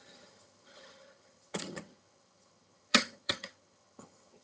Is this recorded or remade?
remade